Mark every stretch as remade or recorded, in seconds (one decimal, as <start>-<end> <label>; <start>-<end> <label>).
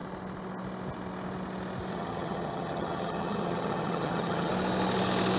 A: 0.0-1.9 recorded; 1.9-4.5 remade; 4.5-5.4 recorded